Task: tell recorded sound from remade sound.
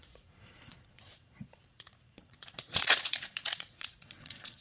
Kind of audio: remade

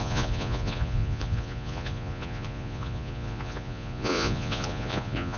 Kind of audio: remade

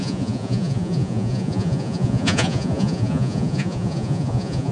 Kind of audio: remade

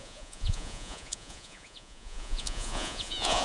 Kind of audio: remade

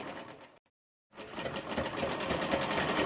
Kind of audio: recorded